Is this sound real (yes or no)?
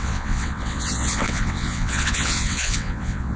no